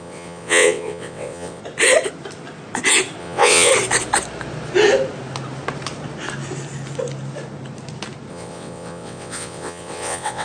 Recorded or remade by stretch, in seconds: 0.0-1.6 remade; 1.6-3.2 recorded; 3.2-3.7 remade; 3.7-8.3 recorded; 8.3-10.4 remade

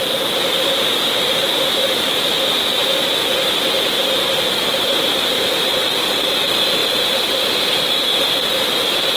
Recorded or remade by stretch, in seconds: 0.0-9.2 recorded

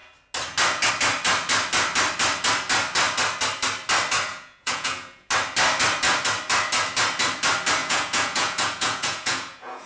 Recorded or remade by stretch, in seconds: 0.0-4.3 recorded; 4.3-5.3 remade; 5.3-7.8 recorded; 7.8-9.9 remade

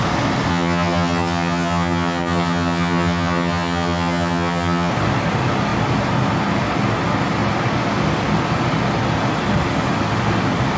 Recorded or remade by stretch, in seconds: 0.0-0.5 recorded; 0.5-4.9 remade; 4.9-10.8 recorded